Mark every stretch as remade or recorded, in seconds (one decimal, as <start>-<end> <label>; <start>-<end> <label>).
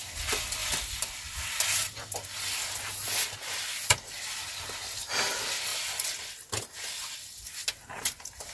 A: 0.0-8.5 recorded